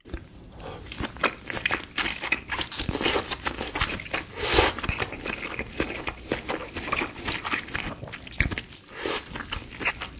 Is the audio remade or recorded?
recorded